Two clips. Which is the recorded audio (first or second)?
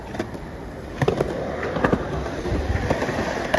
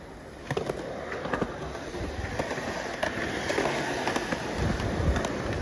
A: second